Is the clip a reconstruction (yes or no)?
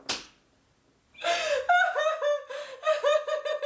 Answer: no